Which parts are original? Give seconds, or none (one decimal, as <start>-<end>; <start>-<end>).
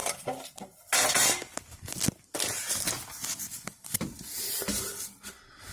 0.0-5.7